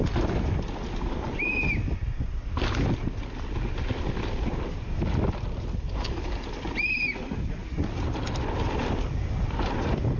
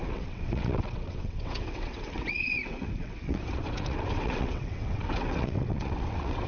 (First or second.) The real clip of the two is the first